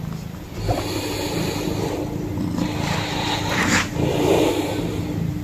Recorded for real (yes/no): yes